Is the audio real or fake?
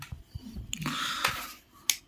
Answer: real